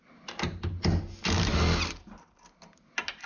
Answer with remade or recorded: recorded